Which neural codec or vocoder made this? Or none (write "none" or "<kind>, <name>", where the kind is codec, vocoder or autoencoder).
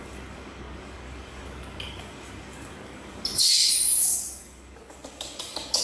codec, DAC